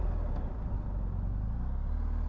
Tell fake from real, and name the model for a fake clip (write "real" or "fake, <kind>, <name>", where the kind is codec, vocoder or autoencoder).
real